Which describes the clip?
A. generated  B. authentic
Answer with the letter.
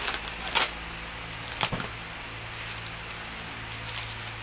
B